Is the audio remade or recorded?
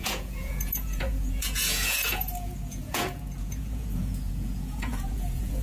remade